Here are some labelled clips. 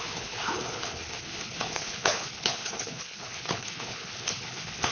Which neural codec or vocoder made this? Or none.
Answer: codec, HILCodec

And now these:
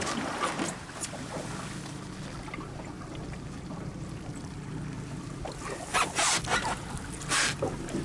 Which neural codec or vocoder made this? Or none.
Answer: none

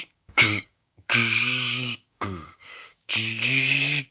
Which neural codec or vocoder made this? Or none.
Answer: codec, DAC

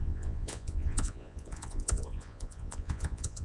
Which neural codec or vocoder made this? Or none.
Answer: vocoder, Vocos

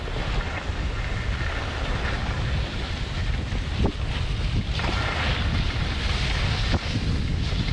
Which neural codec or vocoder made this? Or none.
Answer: none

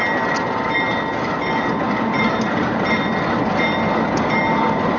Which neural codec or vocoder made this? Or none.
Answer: none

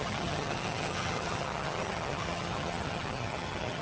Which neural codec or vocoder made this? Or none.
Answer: vocoder, HiFi-GAN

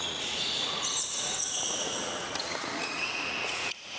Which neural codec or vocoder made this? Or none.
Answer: vocoder, Vocos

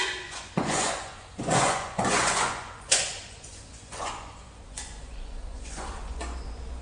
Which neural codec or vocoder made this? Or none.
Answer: vocoder, Vocos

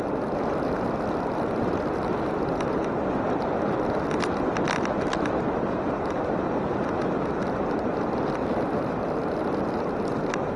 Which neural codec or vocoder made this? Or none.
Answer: none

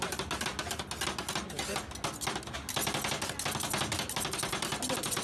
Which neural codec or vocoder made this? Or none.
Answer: none